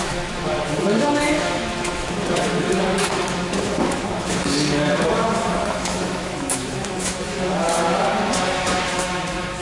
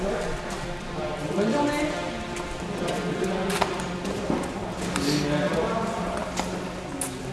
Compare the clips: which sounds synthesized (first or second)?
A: first